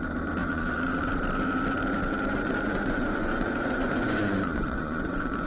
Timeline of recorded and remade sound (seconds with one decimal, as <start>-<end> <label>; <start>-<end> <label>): 0.0-0.4 recorded; 0.4-1.1 remade; 1.1-2.3 recorded; 2.3-5.5 remade